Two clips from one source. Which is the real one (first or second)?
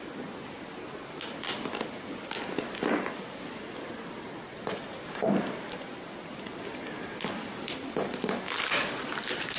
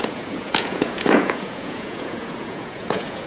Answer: first